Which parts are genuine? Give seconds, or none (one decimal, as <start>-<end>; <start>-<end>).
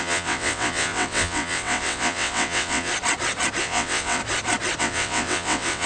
2.9-3.6; 4.2-4.8